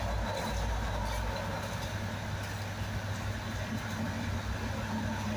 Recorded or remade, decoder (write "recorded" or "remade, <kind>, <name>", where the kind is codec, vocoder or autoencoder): recorded